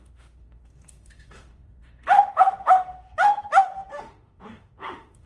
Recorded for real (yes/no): no